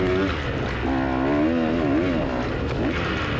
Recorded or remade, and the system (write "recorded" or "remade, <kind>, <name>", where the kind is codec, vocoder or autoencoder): recorded